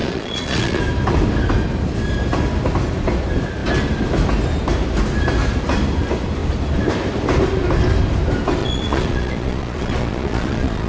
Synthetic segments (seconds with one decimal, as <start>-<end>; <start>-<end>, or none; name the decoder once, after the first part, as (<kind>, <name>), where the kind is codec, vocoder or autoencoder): 0.0-0.8 (vocoder, Vocos); 8.6-10.9